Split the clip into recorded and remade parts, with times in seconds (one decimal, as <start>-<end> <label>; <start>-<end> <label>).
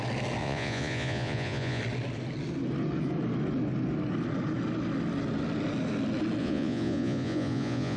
0.0-0.4 recorded; 0.4-1.8 remade; 1.8-6.4 recorded; 6.4-8.0 remade